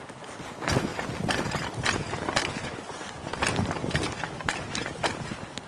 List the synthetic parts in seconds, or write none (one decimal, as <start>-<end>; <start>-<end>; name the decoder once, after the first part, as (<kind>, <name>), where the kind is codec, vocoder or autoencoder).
none